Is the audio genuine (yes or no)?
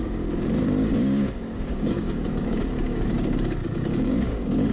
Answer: no